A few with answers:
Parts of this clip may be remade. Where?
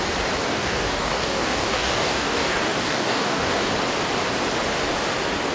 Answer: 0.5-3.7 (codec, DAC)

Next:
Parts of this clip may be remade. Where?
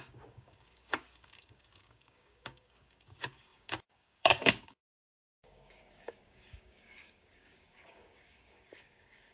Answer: 0.0-9.3 (codec, DAC)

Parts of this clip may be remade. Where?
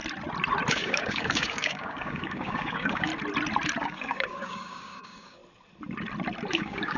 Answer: 0.7-3.1 (codec, DAC); 3.8-5.4; 6.5-7.0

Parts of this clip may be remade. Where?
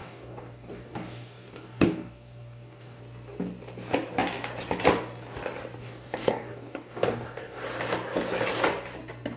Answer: 0.0-3.0 (codec, DAC); 5.8-7.6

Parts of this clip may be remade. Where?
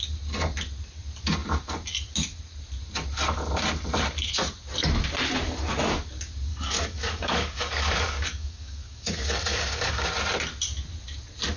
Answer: 6.5-10.1 (codec, DAC)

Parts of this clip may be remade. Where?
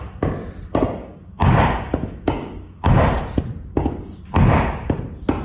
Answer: 1.0-2.9 (codec, DAC); 3.7-4.2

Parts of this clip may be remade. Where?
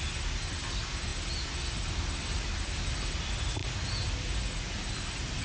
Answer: none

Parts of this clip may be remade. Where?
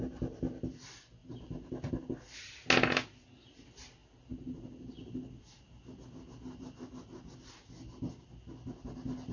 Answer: none